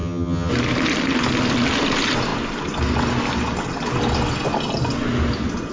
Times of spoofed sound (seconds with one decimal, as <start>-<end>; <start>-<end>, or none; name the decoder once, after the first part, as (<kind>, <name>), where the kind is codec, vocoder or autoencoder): 0.0-0.5 (vocoder, HiFi-GAN)